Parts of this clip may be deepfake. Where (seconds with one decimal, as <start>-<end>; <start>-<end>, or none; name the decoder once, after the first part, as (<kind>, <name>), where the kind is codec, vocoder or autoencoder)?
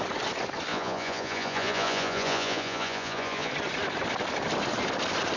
0.7-3.5 (vocoder, Vocos)